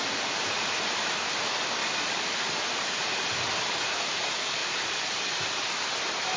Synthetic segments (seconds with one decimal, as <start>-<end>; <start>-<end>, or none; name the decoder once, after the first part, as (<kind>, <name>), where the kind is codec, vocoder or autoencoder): 0.0-6.4 (vocoder, BigVGAN v2)